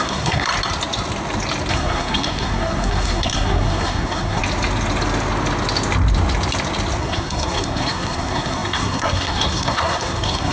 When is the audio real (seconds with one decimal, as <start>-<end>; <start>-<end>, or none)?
0.5-1.7; 4.4-7.0